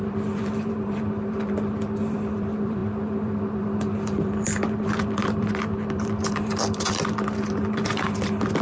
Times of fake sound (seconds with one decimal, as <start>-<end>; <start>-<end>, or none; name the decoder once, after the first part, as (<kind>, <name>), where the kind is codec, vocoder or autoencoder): 0.0-8.6 (vocoder, BigVGAN v2)